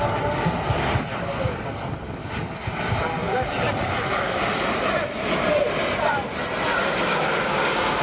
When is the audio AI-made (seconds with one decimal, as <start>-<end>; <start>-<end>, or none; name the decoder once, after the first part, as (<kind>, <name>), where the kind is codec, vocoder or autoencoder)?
6.8-8.0 (codec, DAC)